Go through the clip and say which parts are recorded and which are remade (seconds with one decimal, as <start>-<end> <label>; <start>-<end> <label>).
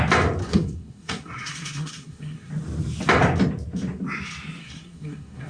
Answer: 0.0-0.4 recorded; 0.4-2.5 remade; 2.5-4.6 recorded; 4.6-5.5 remade